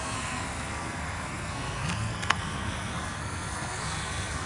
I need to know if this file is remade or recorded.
remade